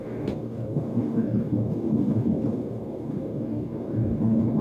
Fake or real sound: fake